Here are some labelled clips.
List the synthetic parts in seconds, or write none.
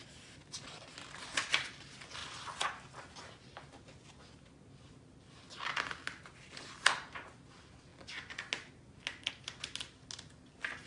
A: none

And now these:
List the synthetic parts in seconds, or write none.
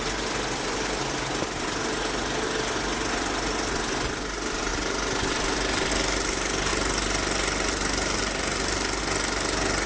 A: none